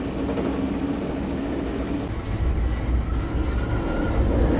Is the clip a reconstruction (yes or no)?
no